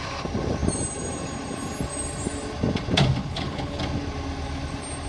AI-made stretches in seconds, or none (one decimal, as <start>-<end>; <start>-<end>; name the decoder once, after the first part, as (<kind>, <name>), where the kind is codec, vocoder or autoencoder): 3.2-3.8 (codec, HILCodec)